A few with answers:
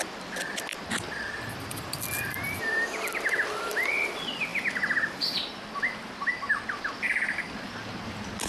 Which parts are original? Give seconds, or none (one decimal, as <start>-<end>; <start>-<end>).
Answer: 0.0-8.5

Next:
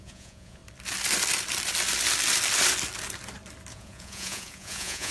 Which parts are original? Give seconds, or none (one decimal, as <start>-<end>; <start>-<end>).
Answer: 0.6-3.7

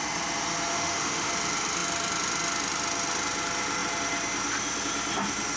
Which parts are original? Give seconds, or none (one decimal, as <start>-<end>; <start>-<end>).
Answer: 0.0-0.7; 1.3-5.6